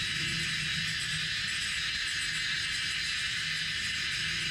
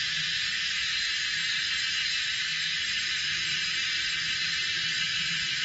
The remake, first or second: second